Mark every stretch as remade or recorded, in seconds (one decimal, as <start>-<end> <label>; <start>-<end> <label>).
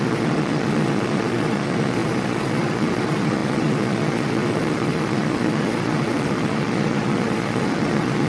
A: 0.0-8.3 remade